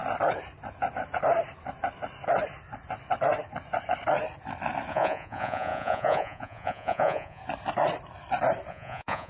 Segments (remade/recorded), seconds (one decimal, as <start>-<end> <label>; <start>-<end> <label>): 0.0-4.9 recorded; 4.9-7.4 remade; 7.4-8.7 recorded; 8.7-9.3 remade

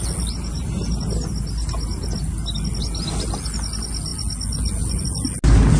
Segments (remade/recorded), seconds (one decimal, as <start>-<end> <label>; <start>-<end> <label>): 0.0-5.8 recorded

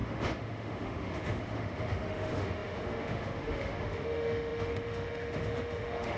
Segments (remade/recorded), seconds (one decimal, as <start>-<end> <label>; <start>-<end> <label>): 0.0-6.2 remade

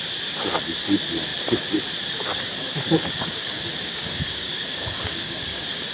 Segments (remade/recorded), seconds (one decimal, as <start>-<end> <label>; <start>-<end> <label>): 0.0-2.3 recorded; 2.3-5.9 remade

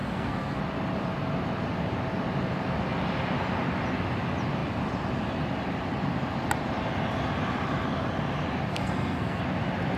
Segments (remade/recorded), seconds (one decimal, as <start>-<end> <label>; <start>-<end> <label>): 0.0-0.6 remade; 0.6-8.7 recorded; 8.7-9.4 remade; 9.4-10.0 recorded

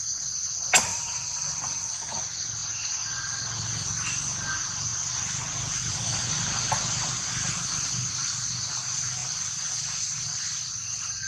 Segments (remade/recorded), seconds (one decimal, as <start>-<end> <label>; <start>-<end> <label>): 0.0-0.9 recorded; 0.9-1.9 remade; 1.9-4.9 recorded; 4.9-7.9 remade; 7.9-9.2 recorded; 9.2-11.3 remade

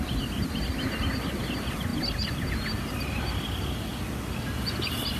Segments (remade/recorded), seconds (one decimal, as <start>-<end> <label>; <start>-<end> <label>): 0.0-5.2 recorded